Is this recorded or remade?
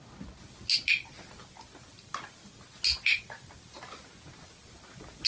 recorded